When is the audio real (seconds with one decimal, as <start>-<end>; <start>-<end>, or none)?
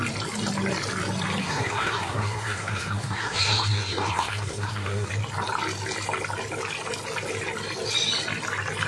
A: 0.0-1.4; 5.1-8.9